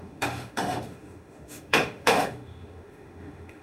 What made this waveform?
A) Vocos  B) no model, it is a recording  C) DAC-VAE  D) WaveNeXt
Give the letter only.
C